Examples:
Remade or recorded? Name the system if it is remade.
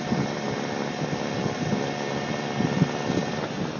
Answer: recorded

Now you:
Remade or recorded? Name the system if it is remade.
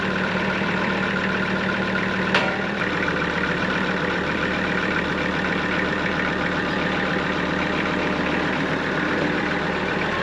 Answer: remade, vocoder, BigVGAN v2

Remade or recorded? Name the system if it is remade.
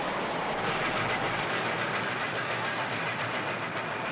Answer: recorded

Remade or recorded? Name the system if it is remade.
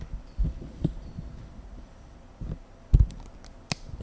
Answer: remade, vocoder, BigVGAN v2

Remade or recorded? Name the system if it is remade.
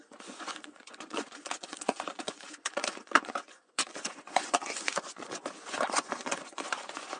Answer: remade, vocoder, Vocos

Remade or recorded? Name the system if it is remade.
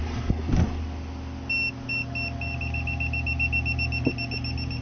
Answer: recorded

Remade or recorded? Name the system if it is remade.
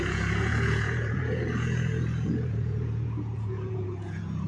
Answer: remade, vocoder, Vocos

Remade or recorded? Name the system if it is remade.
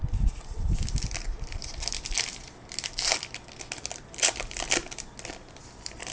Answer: recorded